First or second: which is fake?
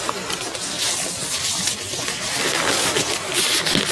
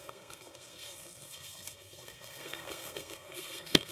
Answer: second